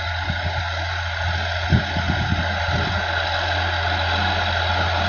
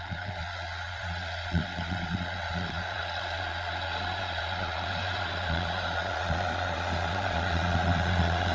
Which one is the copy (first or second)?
second